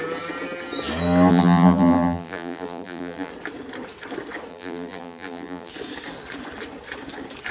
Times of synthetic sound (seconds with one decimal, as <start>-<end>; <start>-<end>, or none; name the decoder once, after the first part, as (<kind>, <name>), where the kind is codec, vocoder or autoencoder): 1.3-3.3 (vocoder, BigVGAN v2); 4.5-5.7